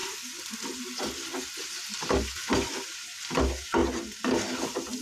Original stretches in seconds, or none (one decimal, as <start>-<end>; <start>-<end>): 2.7-5.0